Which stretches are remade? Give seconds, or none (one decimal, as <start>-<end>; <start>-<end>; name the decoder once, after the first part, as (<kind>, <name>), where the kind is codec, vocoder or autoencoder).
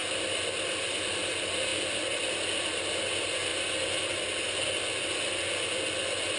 none